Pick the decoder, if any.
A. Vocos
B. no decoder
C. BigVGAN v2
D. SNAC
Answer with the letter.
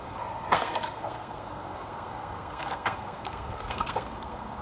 D